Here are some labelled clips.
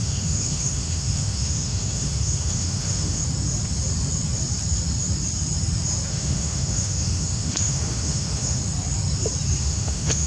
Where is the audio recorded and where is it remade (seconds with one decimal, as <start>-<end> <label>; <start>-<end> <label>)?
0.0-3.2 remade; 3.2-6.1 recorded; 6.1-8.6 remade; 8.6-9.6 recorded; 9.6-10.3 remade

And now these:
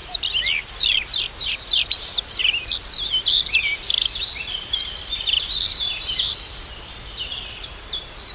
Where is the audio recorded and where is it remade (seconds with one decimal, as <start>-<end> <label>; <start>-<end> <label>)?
0.0-0.6 recorded; 0.6-8.3 remade

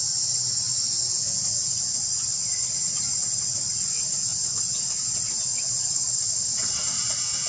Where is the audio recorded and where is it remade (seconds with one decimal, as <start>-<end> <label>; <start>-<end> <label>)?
0.0-0.9 recorded; 0.9-1.4 remade; 1.4-7.5 recorded